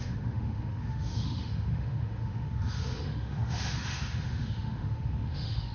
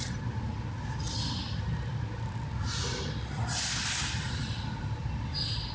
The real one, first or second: second